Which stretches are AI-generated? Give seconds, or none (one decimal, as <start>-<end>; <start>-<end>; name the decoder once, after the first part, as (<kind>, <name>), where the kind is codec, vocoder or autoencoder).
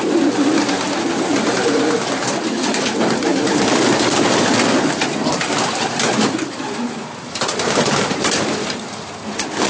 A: none